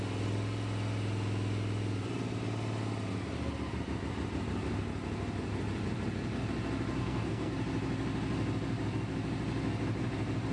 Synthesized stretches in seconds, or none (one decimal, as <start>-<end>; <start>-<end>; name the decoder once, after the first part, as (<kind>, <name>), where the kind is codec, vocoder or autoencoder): 7.0-7.5 (codec, SNAC)